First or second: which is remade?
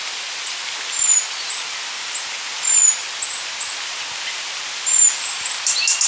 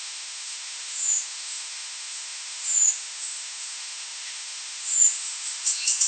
second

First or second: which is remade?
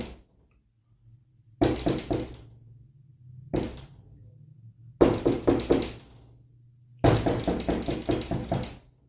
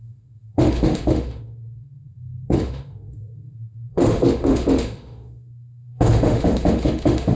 second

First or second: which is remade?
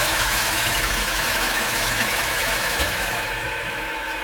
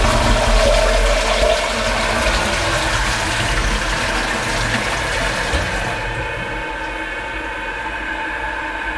first